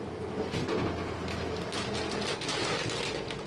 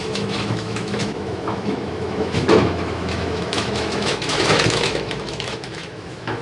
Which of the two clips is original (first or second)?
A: first